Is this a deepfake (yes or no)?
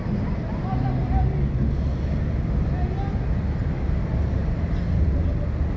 no